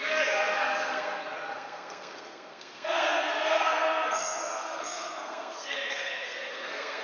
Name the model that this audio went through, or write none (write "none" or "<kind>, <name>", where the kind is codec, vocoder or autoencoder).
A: codec, SNAC